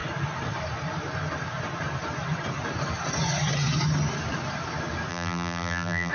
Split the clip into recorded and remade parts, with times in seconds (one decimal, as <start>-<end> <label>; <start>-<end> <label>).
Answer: 0.0-5.1 recorded; 5.1-6.1 remade